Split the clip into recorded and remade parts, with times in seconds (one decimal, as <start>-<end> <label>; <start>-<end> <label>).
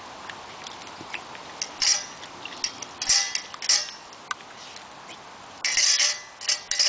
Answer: 0.0-6.9 recorded